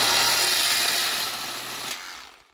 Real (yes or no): yes